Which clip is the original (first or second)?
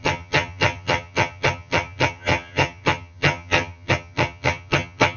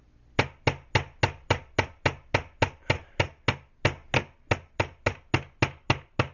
second